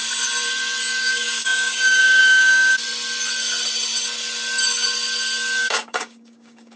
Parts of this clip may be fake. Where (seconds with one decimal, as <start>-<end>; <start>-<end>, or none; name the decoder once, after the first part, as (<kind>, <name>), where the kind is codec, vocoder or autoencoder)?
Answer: 1.0-2.7 (codec, DAC); 5.6-6.8